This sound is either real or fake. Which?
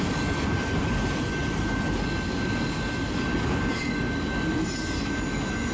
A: real